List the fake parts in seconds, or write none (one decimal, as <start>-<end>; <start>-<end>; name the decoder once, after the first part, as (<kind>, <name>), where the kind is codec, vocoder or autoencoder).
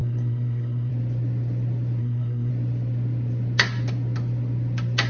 0.0-0.9 (codec, SNAC); 2.0-2.5